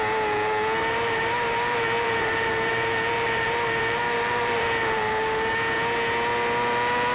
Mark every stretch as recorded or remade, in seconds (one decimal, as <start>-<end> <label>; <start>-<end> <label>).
0.0-0.8 recorded; 0.8-5.1 remade; 5.1-7.1 recorded